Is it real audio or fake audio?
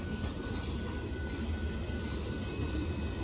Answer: real